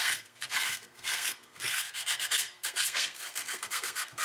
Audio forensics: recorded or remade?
remade